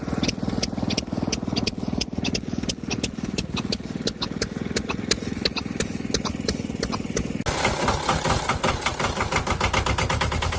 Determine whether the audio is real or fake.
real